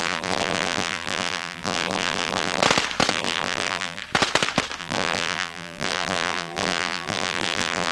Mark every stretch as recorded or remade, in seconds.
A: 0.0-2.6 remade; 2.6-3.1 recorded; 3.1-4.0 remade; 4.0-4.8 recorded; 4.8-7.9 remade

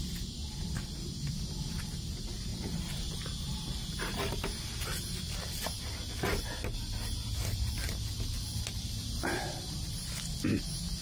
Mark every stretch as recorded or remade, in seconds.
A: 0.0-2.5 recorded; 2.5-5.8 remade; 5.8-9.0 recorded; 9.0-9.6 remade; 9.6-11.0 recorded

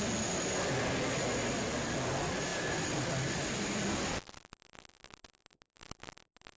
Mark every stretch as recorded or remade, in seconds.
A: 0.0-2.5 recorded; 2.5-3.8 remade; 3.8-6.6 recorded

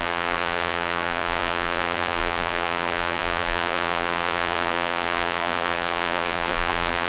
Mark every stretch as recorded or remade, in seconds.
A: 0.0-7.1 remade

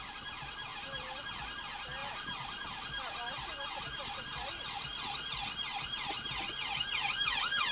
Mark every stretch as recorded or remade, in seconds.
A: 0.0-0.7 recorded; 0.7-1.3 remade; 1.3-2.0 recorded; 2.0-6.4 remade; 6.4-7.7 recorded

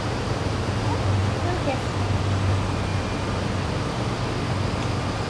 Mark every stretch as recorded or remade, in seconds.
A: 0.0-1.2 remade; 1.2-2.5 recorded; 2.5-2.9 remade; 2.9-5.3 recorded

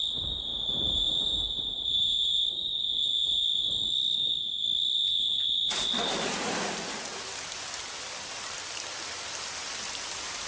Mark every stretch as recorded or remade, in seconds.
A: 0.0-0.5 recorded; 0.5-2.4 remade; 2.4-10.5 recorded

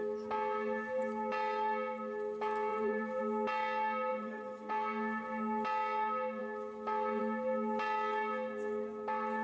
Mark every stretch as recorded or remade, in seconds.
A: 0.0-2.7 recorded; 2.7-3.2 remade; 3.2-4.1 recorded; 4.1-4.7 remade; 4.7-9.4 recorded